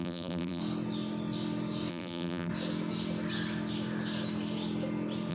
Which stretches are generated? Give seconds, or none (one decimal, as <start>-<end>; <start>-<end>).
0.0-0.6; 1.9-2.5